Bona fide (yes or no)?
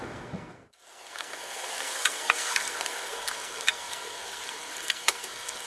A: no